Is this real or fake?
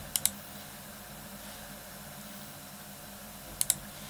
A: real